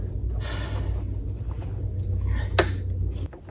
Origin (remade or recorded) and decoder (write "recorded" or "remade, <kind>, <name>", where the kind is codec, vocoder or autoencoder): recorded